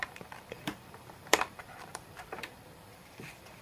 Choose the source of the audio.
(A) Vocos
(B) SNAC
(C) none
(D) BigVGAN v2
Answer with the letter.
D